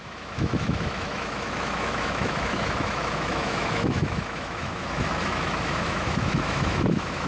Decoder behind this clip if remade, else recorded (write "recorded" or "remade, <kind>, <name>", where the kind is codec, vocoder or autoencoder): remade, autoencoder, DAC-VAE